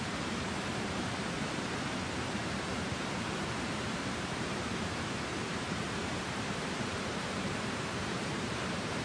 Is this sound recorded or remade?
remade